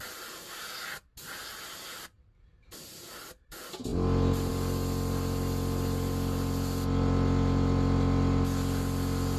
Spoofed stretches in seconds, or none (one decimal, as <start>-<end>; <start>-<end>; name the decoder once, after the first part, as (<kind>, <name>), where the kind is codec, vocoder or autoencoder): none